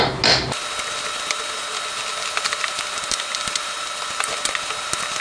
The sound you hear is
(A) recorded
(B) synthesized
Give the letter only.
A